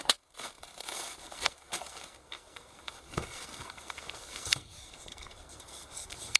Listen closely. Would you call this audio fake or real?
fake